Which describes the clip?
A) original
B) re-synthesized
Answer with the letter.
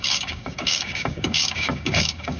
B